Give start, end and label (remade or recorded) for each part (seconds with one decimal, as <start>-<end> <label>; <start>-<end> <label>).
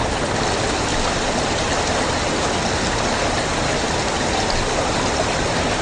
0.0-5.8 recorded